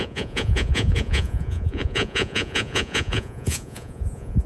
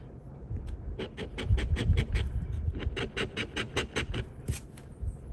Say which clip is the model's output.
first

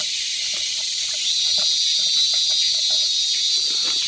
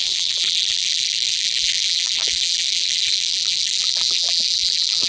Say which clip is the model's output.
second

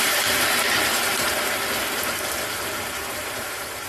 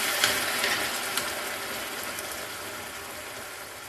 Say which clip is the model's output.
first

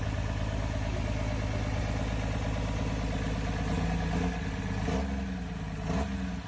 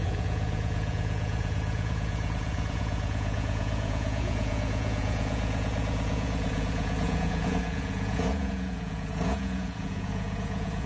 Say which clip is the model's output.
second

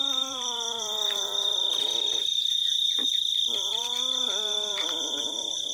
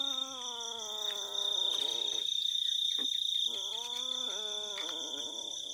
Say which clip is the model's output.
first